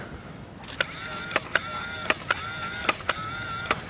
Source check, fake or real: real